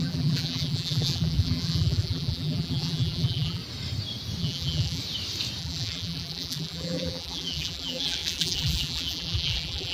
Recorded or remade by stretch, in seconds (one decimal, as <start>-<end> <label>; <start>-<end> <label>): 0.0-3.6 remade; 3.6-4.4 recorded; 4.4-5.0 remade; 5.0-5.6 recorded; 5.6-9.9 remade